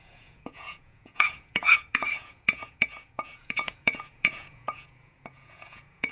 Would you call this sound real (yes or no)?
no